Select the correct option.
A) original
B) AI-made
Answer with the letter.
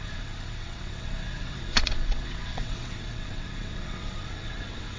B